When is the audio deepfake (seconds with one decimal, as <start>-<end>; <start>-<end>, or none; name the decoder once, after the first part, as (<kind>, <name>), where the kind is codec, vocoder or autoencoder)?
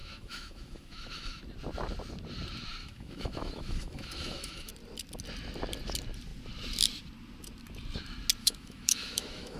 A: 0.0-1.4 (autoencoder, DAC-VAE); 2.8-4.7; 8.4-9.6